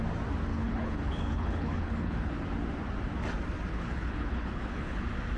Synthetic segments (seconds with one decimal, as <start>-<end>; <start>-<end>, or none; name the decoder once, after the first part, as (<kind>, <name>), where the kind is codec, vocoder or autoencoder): 0.5-2.3 (codec, HILCodec); 3.7-5.0